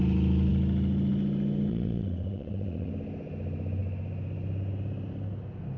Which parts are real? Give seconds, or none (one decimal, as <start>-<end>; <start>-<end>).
0.0-1.7; 2.9-5.8